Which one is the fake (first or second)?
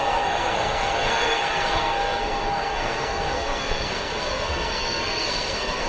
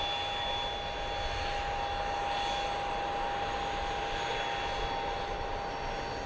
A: first